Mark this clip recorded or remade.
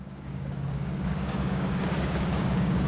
remade